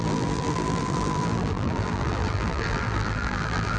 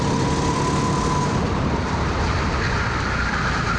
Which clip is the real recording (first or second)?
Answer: second